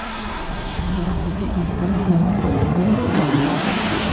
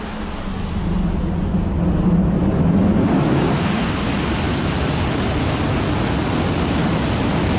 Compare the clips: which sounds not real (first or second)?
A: first